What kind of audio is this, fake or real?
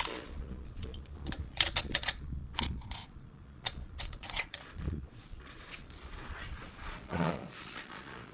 fake